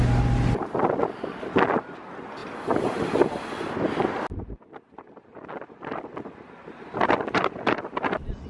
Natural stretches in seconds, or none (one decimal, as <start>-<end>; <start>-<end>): 0.0-8.5